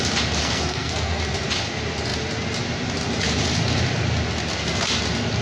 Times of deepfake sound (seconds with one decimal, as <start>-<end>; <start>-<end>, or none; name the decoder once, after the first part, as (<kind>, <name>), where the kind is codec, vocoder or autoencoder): 0.4-1.2 (codec, SNAC)